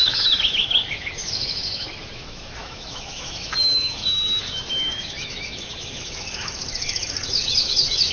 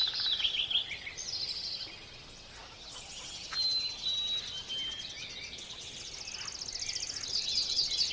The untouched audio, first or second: second